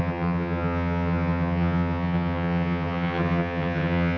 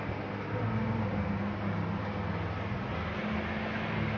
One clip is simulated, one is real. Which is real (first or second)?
second